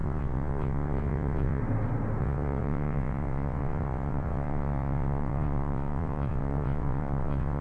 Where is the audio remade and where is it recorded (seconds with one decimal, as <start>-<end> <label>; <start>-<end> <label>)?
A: 0.0-1.6 remade; 1.6-2.2 recorded; 2.2-7.6 remade